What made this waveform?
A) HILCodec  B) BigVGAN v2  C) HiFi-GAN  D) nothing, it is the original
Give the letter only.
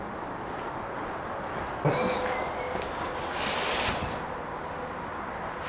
D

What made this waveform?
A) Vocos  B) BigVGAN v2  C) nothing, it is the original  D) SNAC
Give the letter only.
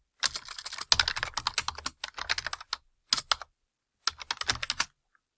C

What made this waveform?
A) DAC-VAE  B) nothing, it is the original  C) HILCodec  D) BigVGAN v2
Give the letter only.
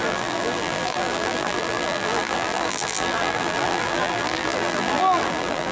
D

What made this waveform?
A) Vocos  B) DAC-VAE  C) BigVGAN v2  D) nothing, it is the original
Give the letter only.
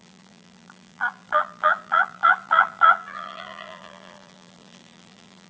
C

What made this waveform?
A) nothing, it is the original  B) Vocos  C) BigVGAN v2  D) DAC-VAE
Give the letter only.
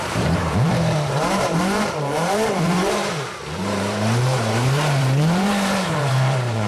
C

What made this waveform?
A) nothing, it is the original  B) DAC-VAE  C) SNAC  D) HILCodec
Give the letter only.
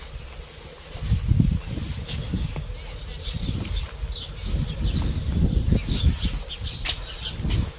A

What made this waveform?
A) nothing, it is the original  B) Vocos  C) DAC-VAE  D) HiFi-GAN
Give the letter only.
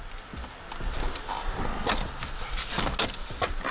A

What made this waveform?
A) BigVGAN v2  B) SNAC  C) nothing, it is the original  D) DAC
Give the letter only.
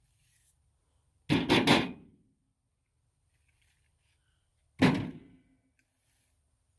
C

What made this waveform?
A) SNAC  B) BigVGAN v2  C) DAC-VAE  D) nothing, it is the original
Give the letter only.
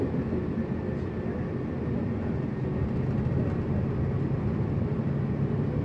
D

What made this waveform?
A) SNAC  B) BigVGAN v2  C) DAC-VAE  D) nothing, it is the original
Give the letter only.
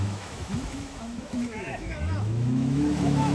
C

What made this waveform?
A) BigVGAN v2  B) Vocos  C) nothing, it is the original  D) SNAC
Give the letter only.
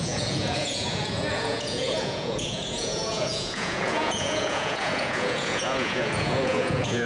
B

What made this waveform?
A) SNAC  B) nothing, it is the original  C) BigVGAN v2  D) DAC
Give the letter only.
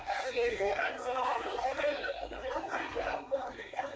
A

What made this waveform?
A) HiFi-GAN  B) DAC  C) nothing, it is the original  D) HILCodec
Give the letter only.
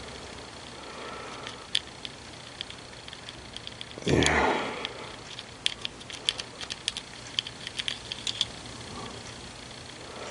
C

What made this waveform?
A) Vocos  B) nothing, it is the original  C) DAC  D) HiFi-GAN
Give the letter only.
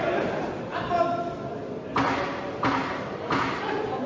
B